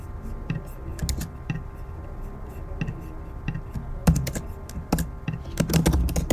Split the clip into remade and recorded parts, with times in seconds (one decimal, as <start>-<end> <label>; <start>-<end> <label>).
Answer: 0.0-6.3 recorded